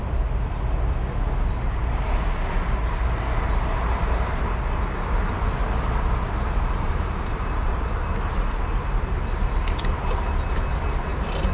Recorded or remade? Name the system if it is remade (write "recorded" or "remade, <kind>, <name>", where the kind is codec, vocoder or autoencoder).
recorded